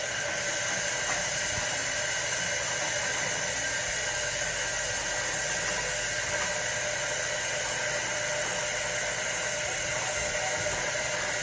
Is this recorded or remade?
recorded